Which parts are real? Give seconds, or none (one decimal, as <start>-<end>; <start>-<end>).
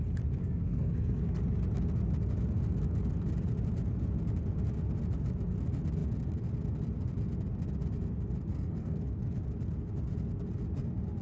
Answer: 0.0-0.4; 1.4-8.5; 9.4-11.2